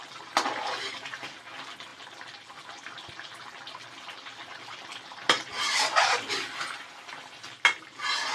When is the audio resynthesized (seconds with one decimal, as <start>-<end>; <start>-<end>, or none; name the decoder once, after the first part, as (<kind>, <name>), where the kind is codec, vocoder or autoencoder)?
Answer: none